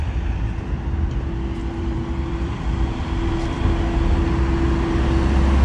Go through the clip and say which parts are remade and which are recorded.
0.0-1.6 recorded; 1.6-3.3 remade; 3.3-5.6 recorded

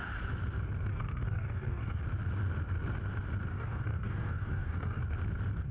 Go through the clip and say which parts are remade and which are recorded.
0.0-0.9 recorded; 0.9-2.0 remade; 2.0-3.5 recorded; 3.5-5.0 remade; 5.0-5.7 recorded

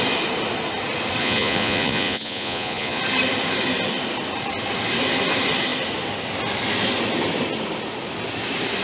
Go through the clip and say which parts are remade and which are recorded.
0.0-1.2 recorded; 1.2-3.0 remade; 3.0-8.8 recorded

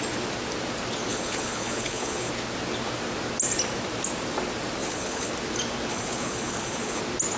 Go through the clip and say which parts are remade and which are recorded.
0.0-1.1 recorded; 1.1-2.3 remade; 2.3-4.8 recorded; 4.8-5.3 remade; 5.3-5.9 recorded; 5.9-7.0 remade; 7.0-7.4 recorded